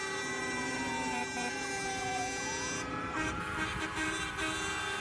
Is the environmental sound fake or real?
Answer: fake